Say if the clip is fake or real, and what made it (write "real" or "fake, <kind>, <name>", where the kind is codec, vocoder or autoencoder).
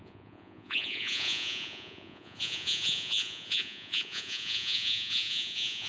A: fake, vocoder, Vocos